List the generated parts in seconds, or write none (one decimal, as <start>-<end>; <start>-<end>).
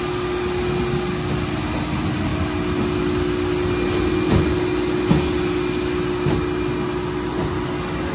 none